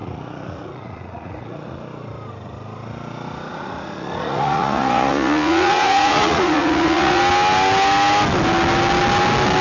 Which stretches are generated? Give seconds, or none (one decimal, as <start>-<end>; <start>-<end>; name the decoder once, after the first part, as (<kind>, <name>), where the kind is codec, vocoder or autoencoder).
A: 0.0-1.8 (vocoder, Vocos); 3.5-7.2